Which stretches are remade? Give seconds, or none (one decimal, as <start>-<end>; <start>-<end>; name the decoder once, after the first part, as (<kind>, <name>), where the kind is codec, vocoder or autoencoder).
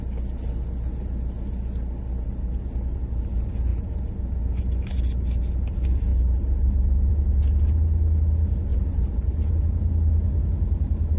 8.7-9.5 (vocoder, BigVGAN v2)